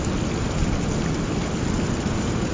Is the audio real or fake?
real